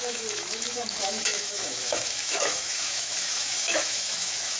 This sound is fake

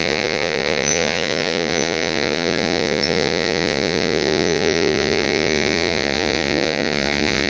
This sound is fake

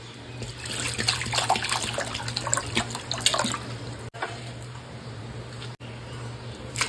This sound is real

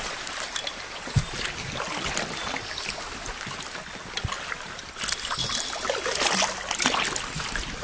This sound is real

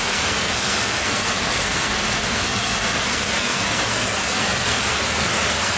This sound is fake